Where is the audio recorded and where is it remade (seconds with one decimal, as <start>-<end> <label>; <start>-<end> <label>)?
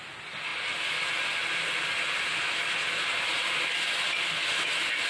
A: 0.0-5.1 recorded